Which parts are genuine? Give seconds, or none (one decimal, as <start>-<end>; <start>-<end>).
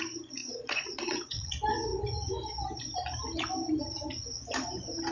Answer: 0.0-0.4; 1.5-5.1